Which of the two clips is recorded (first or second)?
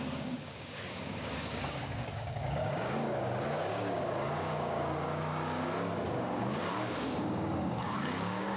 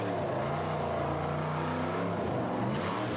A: second